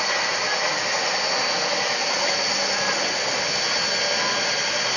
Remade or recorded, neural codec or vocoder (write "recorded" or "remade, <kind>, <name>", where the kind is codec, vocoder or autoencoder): recorded